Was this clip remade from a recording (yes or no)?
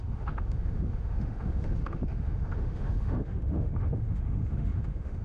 yes